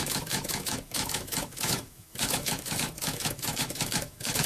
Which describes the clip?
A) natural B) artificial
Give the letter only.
B